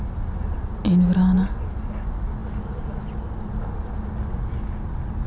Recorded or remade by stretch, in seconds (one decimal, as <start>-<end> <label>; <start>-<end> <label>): 0.0-5.3 recorded